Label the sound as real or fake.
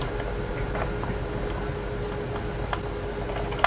real